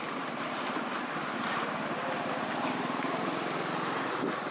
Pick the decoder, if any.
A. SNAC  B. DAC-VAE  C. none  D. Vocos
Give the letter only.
C